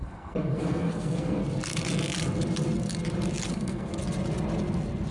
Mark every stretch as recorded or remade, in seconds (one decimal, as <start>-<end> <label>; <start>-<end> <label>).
0.0-1.4 remade; 1.4-3.5 recorded; 3.5-3.9 remade; 3.9-5.1 recorded